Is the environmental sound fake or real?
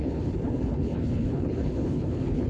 fake